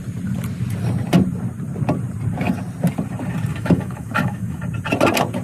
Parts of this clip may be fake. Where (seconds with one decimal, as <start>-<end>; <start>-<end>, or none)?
3.5-4.6

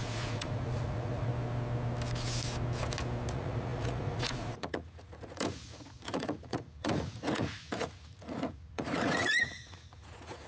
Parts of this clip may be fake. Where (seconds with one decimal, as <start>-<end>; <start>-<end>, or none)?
0.0-1.3; 3.3-10.5

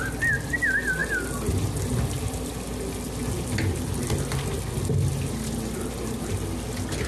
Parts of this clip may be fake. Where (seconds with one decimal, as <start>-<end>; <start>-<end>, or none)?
none

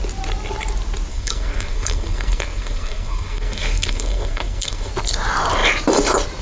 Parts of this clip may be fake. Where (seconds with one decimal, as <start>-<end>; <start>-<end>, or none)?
1.1-4.9

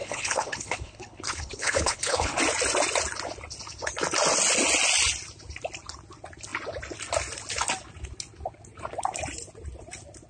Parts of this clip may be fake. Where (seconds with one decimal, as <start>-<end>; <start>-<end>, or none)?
0.0-2.4

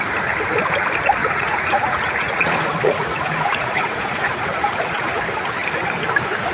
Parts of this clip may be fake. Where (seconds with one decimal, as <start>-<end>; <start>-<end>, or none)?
1.2-5.1

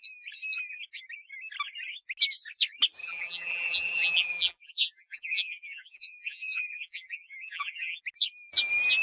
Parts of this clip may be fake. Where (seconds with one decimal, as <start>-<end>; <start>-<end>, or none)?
3.0-8.0

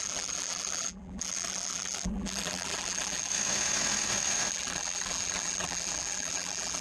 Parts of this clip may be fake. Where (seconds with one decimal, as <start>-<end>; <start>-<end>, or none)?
0.0-3.3; 4.5-6.8